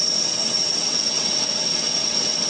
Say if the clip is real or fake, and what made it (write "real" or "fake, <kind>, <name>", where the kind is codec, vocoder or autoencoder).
fake, vocoder, WaveNeXt